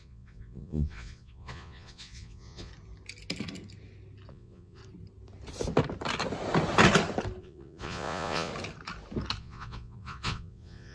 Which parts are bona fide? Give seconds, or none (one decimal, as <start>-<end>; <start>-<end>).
2.7-4.3; 4.8-7.4; 8.5-9.4